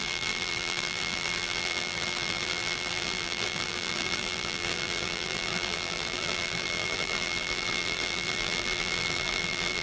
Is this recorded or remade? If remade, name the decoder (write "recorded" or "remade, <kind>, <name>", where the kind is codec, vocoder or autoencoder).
remade, vocoder, BigVGAN v2